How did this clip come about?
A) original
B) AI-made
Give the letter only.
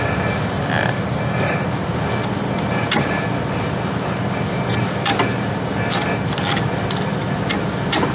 A